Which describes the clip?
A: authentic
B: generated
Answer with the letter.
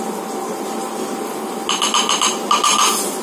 A